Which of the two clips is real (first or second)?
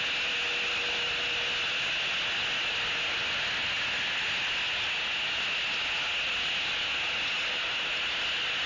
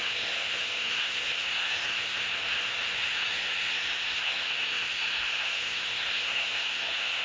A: first